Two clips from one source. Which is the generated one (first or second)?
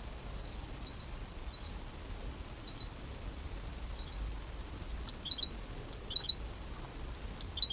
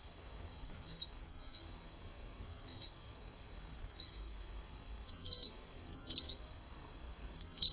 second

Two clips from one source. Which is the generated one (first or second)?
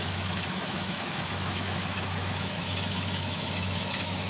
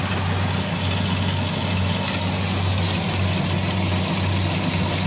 first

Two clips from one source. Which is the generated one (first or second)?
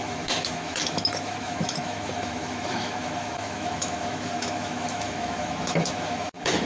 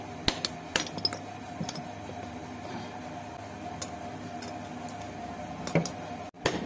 first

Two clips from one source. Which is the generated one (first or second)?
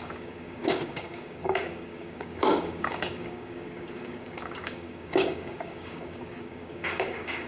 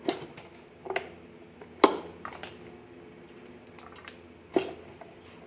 first